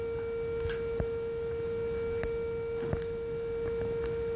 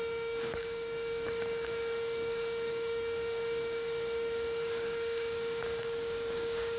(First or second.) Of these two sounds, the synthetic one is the second